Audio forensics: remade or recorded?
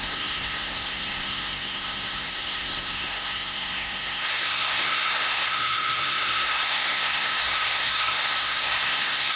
remade